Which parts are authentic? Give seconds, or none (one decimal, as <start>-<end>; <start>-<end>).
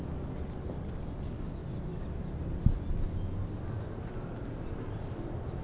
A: 0.0-5.6